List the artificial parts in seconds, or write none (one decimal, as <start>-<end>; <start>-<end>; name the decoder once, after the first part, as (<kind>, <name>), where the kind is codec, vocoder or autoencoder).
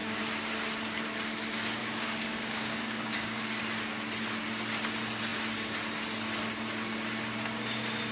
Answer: 0.0-0.5 (codec, DAC); 1.8-3.6